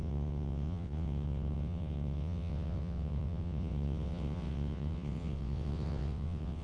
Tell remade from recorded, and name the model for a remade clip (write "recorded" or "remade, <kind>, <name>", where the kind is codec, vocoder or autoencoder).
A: remade, vocoder, WaveNeXt